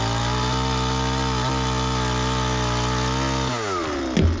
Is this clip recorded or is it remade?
recorded